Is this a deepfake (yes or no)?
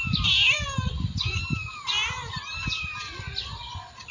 no